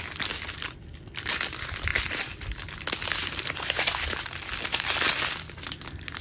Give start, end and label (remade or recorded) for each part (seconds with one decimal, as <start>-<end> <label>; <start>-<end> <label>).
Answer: 0.0-6.2 recorded